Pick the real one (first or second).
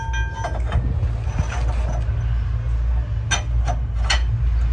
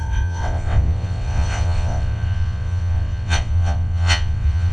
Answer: first